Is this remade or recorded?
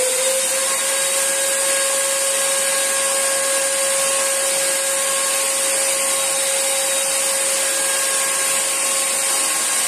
recorded